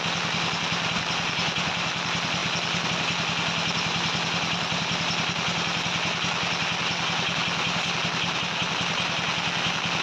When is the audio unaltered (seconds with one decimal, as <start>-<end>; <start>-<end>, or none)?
0.0-10.0